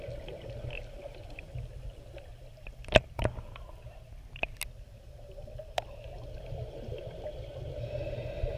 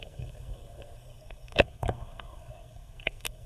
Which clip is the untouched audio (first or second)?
first